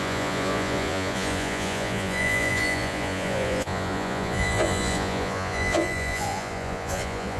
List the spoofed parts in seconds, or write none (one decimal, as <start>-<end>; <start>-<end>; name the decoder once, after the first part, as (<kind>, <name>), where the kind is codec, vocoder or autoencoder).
0.0-7.4 (vocoder, Vocos)